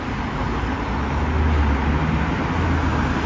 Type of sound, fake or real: real